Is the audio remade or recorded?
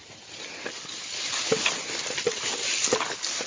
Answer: recorded